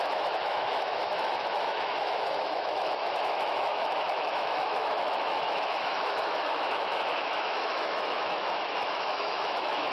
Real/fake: fake